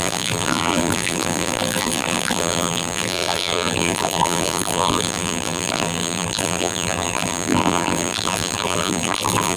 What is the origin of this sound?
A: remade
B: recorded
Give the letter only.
A